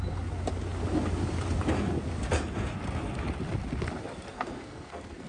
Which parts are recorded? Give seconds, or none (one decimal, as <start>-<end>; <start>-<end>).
0.0-4.3